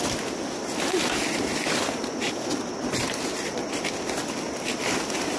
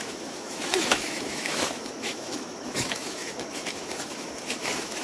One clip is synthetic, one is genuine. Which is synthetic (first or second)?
second